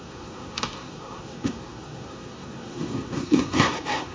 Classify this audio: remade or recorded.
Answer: remade